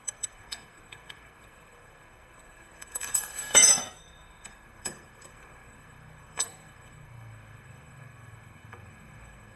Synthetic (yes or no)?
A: yes